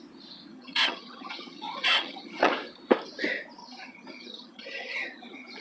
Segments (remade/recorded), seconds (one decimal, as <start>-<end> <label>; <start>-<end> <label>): 0.0-0.5 recorded; 0.5-2.5 remade; 2.5-3.6 recorded; 3.6-5.6 remade